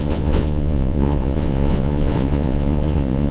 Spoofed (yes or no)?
yes